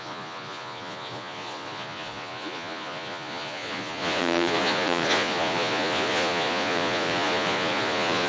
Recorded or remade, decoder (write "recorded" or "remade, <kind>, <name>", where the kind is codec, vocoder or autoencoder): remade, vocoder, Vocos